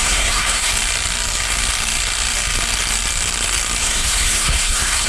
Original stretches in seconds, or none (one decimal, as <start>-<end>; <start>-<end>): 0.7-3.8